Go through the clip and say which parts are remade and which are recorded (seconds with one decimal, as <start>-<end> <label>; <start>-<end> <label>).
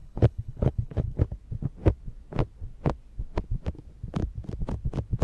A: 0.0-1.2 remade; 1.2-5.2 recorded